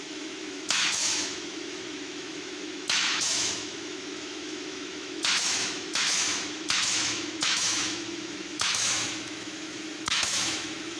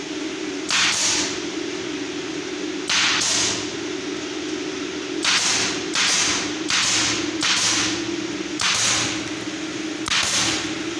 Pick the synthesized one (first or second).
first